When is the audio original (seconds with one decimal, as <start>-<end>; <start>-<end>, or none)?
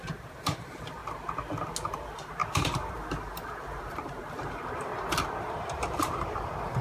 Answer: 1.0-1.9; 4.9-5.5